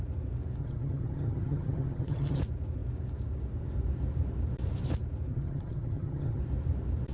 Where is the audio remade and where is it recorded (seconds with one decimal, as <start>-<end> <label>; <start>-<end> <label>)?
0.0-0.6 recorded; 0.6-2.4 remade; 2.4-5.3 recorded; 5.3-6.4 remade; 6.4-7.1 recorded